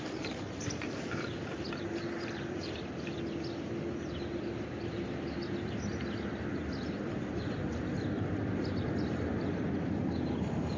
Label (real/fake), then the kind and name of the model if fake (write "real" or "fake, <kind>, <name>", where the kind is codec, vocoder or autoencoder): fake, vocoder, BigVGAN v2